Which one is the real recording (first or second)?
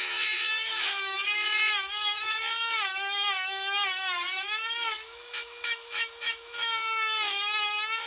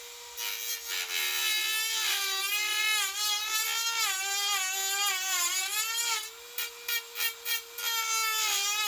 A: second